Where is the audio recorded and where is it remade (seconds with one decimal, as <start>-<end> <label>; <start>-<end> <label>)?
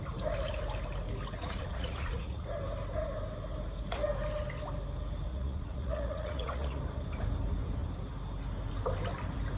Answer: 0.0-1.4 recorded; 1.4-2.5 remade; 2.5-5.3 recorded; 5.3-6.8 remade; 6.8-9.6 recorded